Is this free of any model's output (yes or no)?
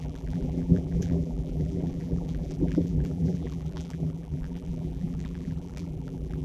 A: no